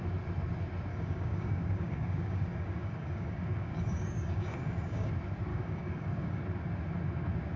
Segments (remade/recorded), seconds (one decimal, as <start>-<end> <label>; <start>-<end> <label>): 0.0-0.9 recorded; 0.9-5.1 remade; 5.1-5.5 recorded; 5.5-6.4 remade; 6.4-7.6 recorded